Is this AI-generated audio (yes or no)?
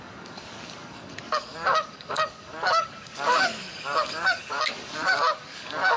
yes